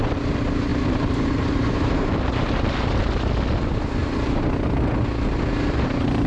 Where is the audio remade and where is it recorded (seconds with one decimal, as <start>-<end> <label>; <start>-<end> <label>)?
0.0-0.7 recorded; 0.7-3.0 remade; 3.0-6.3 recorded